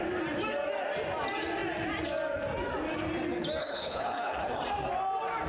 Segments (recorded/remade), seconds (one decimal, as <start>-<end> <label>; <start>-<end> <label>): 0.0-3.6 recorded; 3.6-4.6 remade; 4.6-5.5 recorded

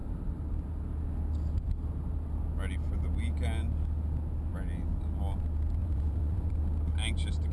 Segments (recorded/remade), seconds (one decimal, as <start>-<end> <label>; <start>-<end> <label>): 0.0-5.8 recorded; 5.8-6.6 remade; 6.6-7.5 recorded

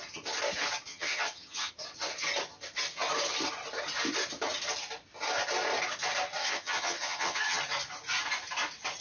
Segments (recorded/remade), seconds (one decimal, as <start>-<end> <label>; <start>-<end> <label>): 0.0-0.9 recorded; 0.9-1.7 remade; 1.7-6.4 recorded; 6.4-7.6 remade; 7.6-9.0 recorded

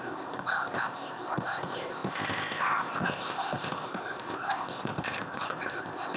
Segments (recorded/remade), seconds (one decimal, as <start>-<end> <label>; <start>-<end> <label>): 0.0-6.2 remade

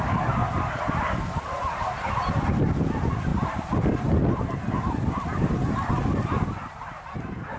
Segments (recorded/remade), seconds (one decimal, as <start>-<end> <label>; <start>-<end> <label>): 0.0-0.4 recorded; 0.4-1.0 remade; 1.0-1.6 recorded; 1.6-2.6 remade; 2.6-7.6 recorded

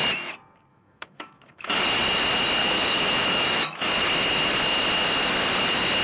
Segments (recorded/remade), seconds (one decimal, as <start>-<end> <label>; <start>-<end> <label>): 0.0-0.7 recorded; 0.7-1.8 remade; 1.8-2.6 recorded; 2.6-3.9 remade; 3.9-6.0 recorded

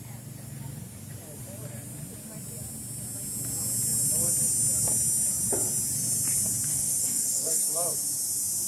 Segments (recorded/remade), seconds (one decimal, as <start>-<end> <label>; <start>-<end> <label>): 0.0-6.7 recorded; 6.7-7.6 remade; 7.6-8.7 recorded

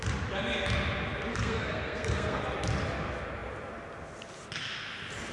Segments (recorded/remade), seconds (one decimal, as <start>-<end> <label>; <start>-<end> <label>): 0.0-1.3 recorded; 1.3-2.4 remade; 2.4-5.3 recorded